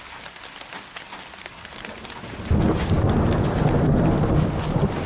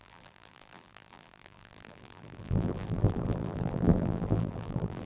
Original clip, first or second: first